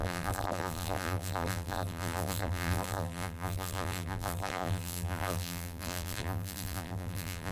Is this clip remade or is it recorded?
remade